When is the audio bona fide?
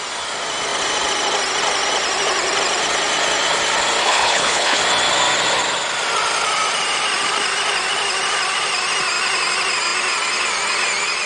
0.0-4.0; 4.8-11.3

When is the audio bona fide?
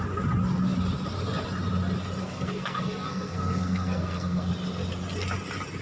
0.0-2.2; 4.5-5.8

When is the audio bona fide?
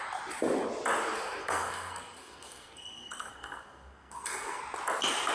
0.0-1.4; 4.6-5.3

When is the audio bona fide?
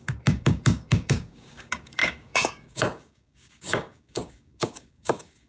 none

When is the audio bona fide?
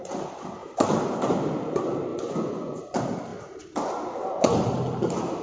0.0-2.1; 2.8-5.4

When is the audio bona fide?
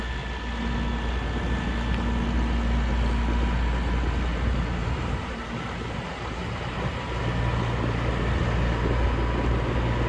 0.0-4.3; 7.2-10.1